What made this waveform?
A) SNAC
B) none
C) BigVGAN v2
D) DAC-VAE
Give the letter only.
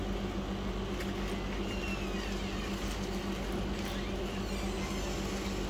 B